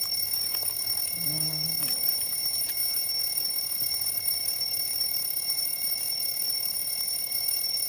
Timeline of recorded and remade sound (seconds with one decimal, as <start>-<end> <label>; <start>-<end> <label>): 0.0-2.1 remade; 2.1-3.2 recorded; 3.2-7.9 remade